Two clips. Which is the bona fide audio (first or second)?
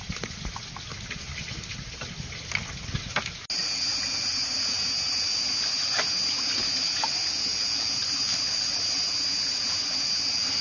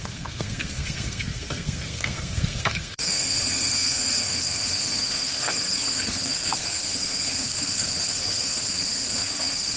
first